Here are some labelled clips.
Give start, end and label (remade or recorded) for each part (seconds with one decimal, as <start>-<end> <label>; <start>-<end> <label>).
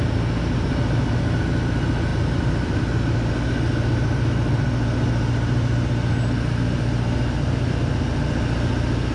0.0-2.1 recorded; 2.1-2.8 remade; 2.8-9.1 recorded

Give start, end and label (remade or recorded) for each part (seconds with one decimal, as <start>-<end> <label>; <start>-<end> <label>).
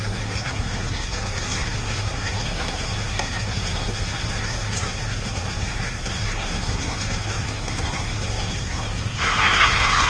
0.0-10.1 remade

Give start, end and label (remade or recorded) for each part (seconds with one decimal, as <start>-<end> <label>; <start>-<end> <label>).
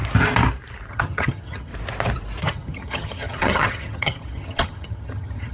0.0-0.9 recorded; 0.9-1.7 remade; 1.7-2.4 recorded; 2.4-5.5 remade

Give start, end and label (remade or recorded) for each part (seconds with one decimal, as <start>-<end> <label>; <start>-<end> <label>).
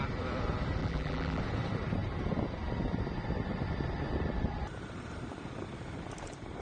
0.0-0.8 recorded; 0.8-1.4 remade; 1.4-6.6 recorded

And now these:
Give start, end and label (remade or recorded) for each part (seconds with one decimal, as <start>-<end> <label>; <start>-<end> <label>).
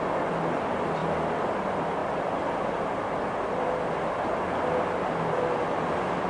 0.0-6.3 recorded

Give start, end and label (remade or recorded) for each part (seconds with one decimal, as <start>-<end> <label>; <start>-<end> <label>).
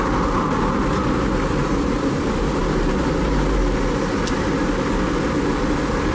0.0-1.6 recorded; 1.6-2.2 remade; 2.2-6.1 recorded